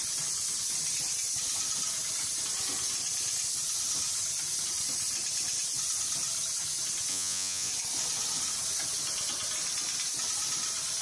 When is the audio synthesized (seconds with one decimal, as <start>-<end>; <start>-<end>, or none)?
7.1-7.7